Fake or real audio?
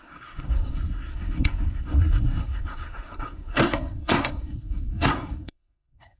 fake